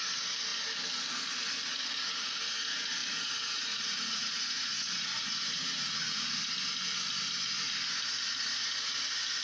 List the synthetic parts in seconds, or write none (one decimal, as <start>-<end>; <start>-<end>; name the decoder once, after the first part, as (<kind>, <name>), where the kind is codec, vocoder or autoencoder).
3.0-6.5 (vocoder, Vocos)